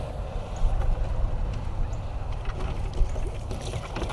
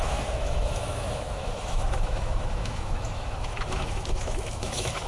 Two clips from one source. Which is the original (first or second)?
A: first